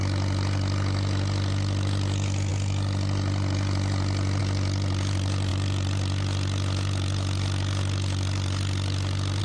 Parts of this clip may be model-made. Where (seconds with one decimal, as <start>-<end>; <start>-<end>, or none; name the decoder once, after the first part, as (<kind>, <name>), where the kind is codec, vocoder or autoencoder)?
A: 5.5-9.4 (vocoder, BigVGAN v2)